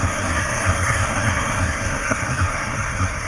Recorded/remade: remade